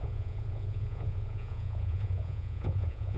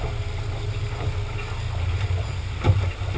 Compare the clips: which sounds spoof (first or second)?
first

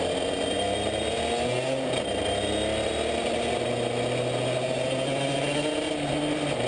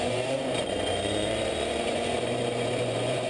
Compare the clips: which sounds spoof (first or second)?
second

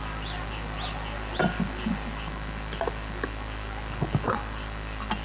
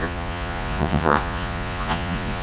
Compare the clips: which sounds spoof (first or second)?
second